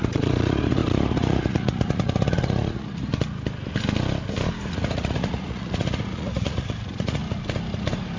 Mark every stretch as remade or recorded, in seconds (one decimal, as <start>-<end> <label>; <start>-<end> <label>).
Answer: 0.0-3.1 remade; 3.1-4.7 recorded; 4.7-7.2 remade; 7.2-8.2 recorded